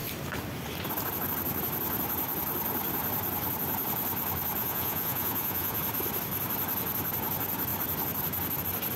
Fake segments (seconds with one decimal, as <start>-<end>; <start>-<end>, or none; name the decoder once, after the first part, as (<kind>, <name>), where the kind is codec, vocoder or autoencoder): 4.6-5.8 (vocoder, Vocos)